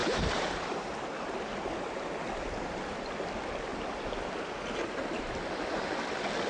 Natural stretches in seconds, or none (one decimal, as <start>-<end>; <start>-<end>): 1.8-3.7; 4.3-6.5